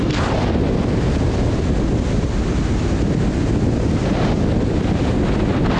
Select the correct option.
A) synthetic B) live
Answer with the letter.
B